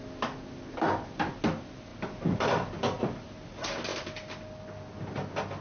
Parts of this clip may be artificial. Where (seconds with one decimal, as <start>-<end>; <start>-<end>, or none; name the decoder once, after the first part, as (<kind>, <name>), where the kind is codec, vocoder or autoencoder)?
none